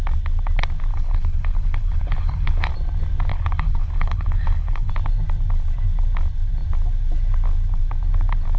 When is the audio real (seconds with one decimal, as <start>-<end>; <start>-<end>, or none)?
0.0-0.9; 2.7-3.3; 4.9-8.6